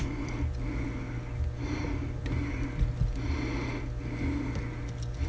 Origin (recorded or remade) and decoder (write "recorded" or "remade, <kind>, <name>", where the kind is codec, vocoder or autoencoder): recorded